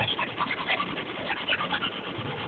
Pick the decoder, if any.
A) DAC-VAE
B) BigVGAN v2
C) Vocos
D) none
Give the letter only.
D